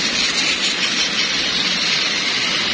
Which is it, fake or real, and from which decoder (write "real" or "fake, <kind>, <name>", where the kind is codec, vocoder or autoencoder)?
real